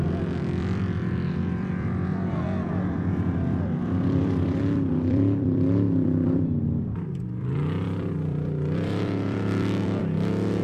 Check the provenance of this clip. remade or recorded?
remade